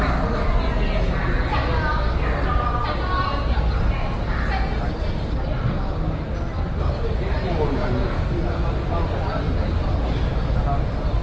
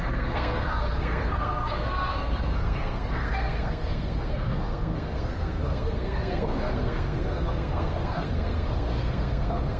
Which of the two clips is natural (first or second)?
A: first